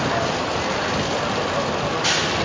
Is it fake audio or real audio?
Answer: real